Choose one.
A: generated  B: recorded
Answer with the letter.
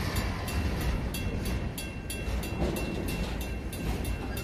B